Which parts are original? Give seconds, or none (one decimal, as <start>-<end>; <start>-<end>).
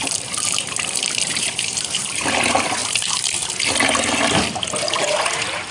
2.8-5.0